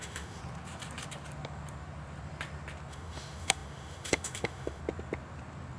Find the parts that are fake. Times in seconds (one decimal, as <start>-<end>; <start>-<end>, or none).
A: 0.0-0.4; 2.9-4.8